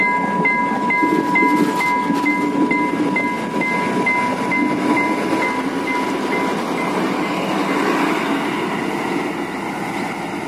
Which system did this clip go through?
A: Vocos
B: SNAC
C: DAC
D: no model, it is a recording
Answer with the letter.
D